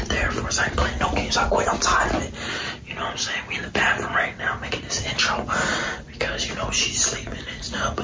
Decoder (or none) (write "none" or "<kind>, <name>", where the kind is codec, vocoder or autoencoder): none